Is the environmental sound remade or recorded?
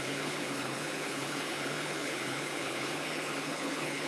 remade